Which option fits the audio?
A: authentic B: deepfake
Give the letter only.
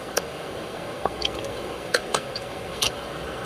B